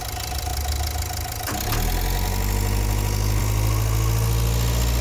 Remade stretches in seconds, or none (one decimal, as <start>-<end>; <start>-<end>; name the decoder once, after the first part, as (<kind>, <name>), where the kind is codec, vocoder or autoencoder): none